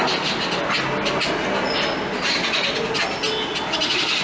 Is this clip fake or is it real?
real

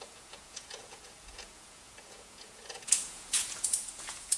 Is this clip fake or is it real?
fake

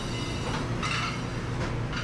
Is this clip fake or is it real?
real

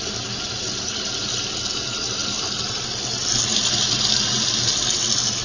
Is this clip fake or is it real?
real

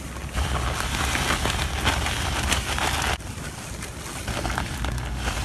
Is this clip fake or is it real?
real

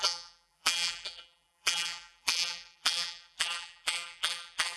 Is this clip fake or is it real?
fake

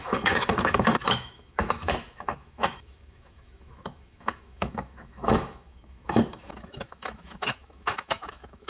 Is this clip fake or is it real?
fake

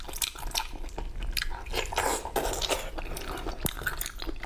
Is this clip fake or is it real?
real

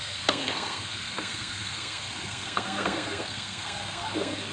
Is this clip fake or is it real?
fake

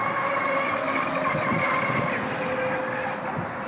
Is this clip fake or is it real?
real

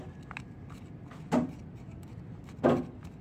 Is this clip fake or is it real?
real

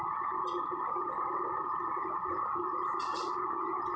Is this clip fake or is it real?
real